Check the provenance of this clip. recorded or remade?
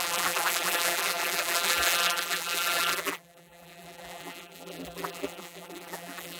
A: remade